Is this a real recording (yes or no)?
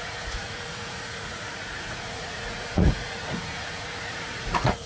no